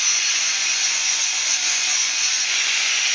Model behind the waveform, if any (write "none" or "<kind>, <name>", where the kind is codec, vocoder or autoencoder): vocoder, Vocos